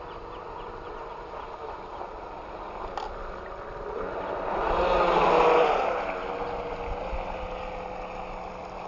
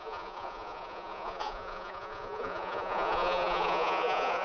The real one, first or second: first